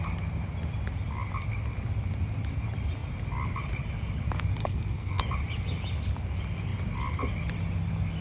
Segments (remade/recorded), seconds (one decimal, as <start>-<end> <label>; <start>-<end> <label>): 0.0-4.6 recorded; 4.6-5.2 remade; 5.2-8.2 recorded